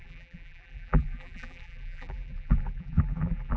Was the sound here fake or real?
fake